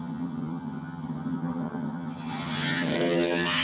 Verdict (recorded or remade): remade